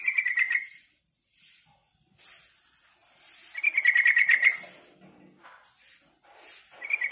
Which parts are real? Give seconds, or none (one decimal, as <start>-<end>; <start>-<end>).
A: 0.0-7.1